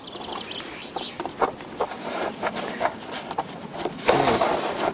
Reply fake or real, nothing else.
real